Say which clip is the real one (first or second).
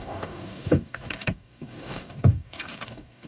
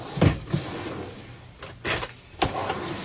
second